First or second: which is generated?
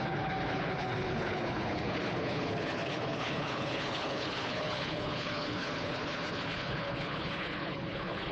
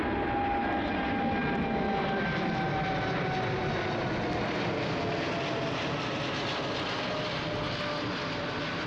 first